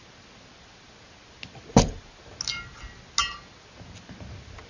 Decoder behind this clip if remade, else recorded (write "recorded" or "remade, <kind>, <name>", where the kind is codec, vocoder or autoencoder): recorded